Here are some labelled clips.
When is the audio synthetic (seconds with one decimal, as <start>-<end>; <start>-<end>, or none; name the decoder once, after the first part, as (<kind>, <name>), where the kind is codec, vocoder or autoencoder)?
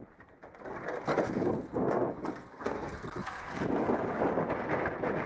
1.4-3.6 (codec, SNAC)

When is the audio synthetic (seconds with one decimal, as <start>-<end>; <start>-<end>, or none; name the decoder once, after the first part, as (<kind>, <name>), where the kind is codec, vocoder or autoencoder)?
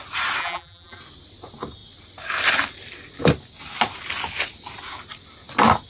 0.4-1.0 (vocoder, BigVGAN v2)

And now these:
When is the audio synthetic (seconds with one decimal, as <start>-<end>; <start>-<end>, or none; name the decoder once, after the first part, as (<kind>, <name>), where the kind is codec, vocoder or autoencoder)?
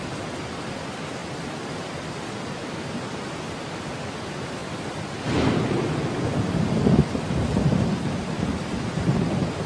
0.0-9.7 (vocoder, BigVGAN v2)